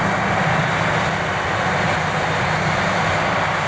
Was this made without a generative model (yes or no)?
yes